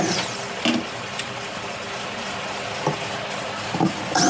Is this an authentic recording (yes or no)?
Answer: yes